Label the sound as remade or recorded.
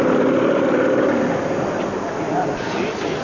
recorded